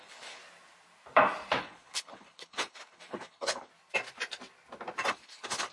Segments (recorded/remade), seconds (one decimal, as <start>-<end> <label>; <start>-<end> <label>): 0.0-0.4 remade; 0.4-1.6 recorded; 1.6-3.7 remade; 3.7-5.1 recorded; 5.1-5.7 remade